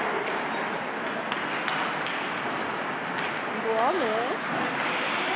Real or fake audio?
real